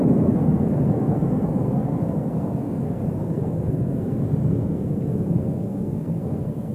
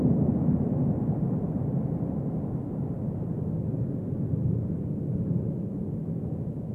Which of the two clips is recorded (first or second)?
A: second